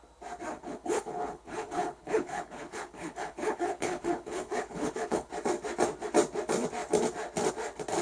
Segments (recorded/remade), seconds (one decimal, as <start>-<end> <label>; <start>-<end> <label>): 0.0-0.5 recorded; 0.5-5.3 remade; 5.3-8.0 recorded